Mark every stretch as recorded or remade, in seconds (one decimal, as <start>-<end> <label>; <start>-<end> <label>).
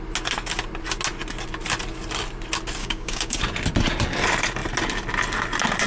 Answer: 0.0-2.8 recorded; 2.8-3.4 remade; 3.4-5.9 recorded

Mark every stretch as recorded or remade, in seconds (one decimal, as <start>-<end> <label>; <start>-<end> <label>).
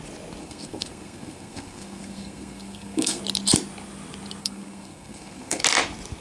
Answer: 0.0-0.4 recorded; 0.4-3.2 remade; 3.2-4.4 recorded; 4.4-5.6 remade; 5.6-6.2 recorded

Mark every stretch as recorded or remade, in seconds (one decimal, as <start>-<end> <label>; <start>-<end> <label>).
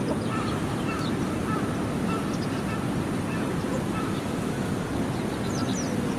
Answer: 0.0-0.7 remade; 0.7-6.2 recorded